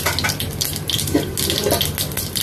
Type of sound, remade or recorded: recorded